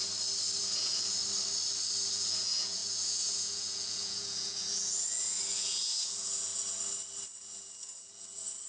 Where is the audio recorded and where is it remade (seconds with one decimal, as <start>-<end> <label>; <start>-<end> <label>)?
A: 0.0-0.6 recorded; 0.6-1.2 remade; 1.2-2.1 recorded; 2.1-6.5 remade; 6.5-7.4 recorded; 7.4-8.7 remade